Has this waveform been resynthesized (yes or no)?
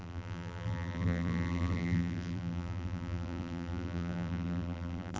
yes